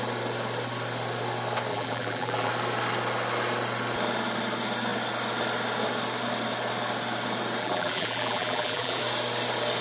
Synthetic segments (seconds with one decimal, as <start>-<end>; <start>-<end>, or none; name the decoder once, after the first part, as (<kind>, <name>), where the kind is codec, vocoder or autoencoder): 1.7-2.5 (vocoder, BigVGAN v2); 7.6-9.0